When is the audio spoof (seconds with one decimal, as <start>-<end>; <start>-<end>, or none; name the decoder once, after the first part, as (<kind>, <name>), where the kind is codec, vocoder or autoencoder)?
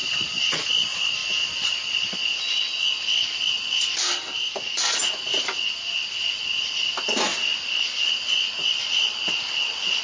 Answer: 0.0-0.7 (vocoder, BigVGAN v2)